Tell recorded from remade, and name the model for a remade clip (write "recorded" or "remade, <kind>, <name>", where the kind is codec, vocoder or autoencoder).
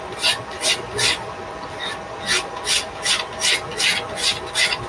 recorded